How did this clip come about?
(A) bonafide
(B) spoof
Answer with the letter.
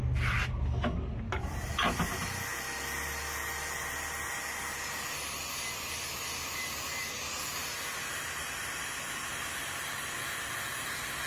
A